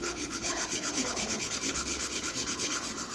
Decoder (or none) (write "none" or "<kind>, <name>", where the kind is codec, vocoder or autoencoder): codec, HILCodec